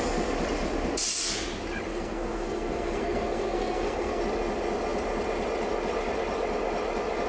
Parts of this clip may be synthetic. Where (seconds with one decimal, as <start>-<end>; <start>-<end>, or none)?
1.9-4.2